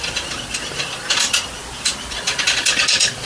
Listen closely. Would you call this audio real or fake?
real